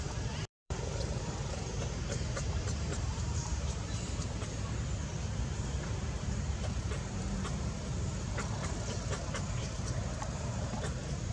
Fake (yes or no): yes